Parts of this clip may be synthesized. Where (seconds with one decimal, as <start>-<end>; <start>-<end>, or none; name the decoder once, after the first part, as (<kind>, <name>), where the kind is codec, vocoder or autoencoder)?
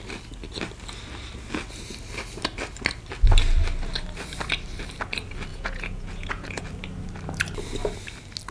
5.5-6.6 (vocoder, Vocos)